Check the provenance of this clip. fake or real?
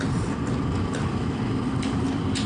real